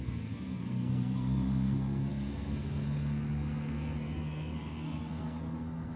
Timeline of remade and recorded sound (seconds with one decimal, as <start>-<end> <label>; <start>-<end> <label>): 0.0-6.0 remade